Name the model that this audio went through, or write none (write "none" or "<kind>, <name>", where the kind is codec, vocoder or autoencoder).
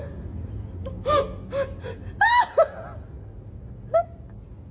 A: none